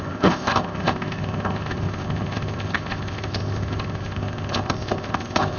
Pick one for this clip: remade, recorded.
remade